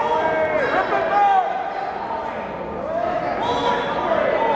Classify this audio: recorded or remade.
recorded